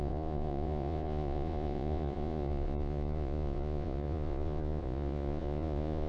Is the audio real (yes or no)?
no